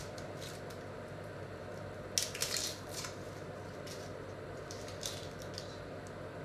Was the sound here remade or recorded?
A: recorded